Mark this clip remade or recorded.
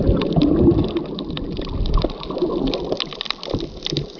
recorded